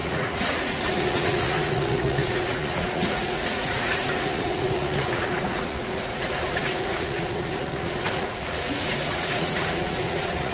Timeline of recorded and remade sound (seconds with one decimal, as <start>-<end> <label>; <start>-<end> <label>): 0.0-10.5 remade

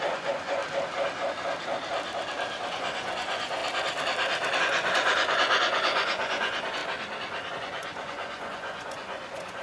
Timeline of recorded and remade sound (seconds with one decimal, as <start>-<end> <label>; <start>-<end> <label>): 0.0-0.6 remade; 0.6-2.7 recorded; 2.7-3.6 remade; 3.6-4.6 recorded; 4.6-6.8 remade; 6.8-7.5 recorded; 7.5-9.6 remade

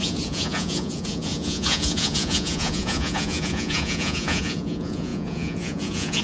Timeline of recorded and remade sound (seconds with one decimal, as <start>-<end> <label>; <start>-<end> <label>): 0.0-6.2 remade

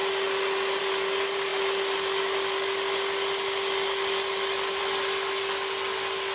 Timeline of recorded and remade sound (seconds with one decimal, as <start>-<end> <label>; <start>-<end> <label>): 0.0-6.3 recorded

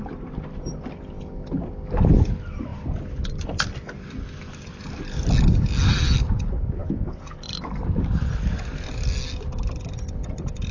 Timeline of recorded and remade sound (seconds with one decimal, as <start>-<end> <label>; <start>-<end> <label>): 0.0-6.8 recorded; 6.8-7.4 remade; 7.4-10.7 recorded

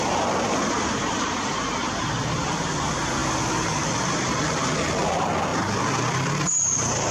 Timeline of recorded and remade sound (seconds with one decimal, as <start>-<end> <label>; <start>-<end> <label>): 0.0-7.1 recorded

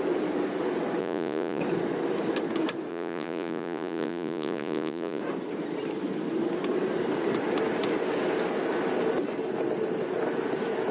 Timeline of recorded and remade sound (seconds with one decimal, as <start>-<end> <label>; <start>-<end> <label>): 0.0-1.0 recorded; 1.0-1.6 remade; 1.6-2.9 recorded; 2.9-5.2 remade; 5.2-10.9 recorded

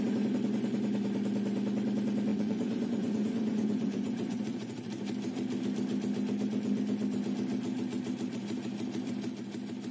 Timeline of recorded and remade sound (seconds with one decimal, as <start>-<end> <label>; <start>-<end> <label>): 0.0-2.3 recorded; 2.3-4.9 remade; 4.9-9.9 recorded